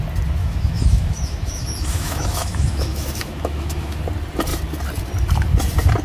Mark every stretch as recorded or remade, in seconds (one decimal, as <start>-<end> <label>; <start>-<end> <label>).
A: 0.0-0.4 recorded; 0.4-4.0 remade; 4.0-6.0 recorded